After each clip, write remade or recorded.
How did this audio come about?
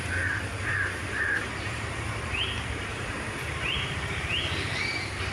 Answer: remade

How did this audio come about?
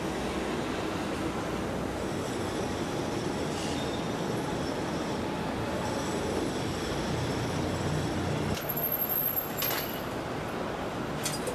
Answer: recorded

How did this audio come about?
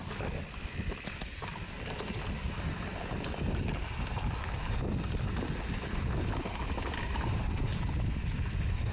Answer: recorded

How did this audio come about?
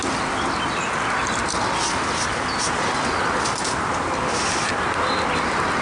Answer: recorded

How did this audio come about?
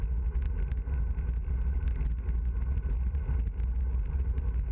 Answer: recorded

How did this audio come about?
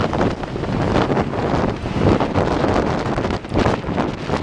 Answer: recorded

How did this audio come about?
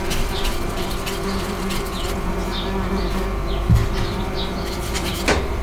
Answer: remade